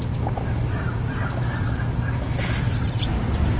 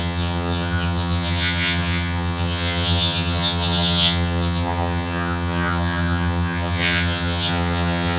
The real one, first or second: first